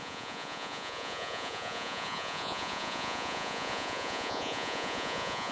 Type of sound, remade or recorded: remade